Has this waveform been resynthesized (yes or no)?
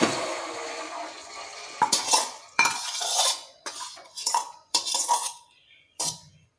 yes